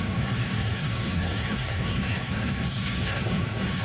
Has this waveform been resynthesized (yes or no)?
yes